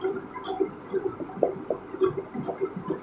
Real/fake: real